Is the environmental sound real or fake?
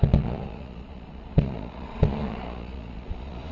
fake